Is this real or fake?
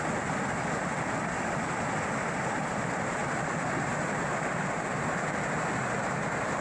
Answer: real